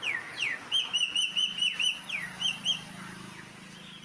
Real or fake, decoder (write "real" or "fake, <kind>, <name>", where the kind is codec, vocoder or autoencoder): real